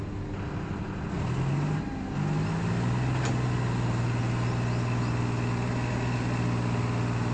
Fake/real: real